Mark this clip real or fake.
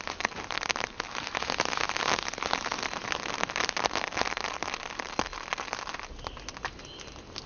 real